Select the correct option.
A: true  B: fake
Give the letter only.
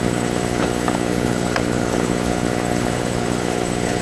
B